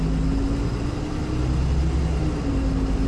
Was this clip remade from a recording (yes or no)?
no